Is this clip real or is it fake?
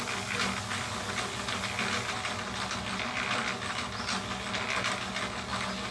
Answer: real